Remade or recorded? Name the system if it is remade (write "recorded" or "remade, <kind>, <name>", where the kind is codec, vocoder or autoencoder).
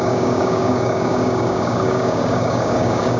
remade, codec, DAC